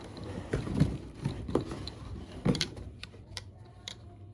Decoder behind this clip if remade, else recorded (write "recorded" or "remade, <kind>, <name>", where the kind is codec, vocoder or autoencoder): remade, vocoder, BigVGAN v2